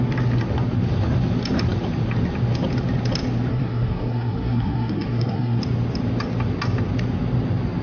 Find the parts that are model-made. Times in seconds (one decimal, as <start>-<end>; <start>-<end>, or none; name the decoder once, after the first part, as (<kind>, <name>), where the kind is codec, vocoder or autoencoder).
3.5-5.6 (codec, SNAC)